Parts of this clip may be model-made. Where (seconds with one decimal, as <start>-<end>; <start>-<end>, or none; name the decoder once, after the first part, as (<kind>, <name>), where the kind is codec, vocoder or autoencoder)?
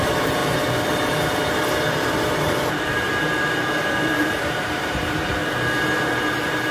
0.0-0.4 (vocoder, BigVGAN v2); 1.9-3.1; 4.2-5.4